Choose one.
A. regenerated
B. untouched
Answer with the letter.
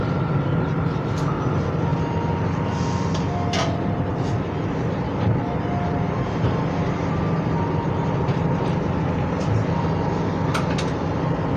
B